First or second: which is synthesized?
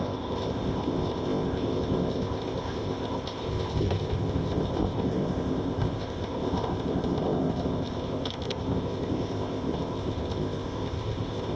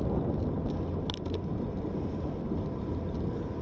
first